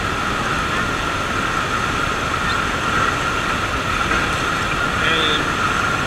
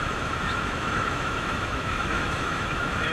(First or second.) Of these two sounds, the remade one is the second